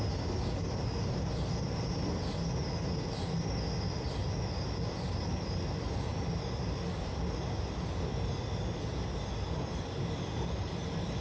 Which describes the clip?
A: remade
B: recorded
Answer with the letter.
B